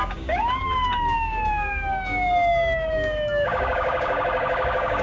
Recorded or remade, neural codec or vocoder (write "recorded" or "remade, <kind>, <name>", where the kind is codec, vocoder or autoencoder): remade, codec, DAC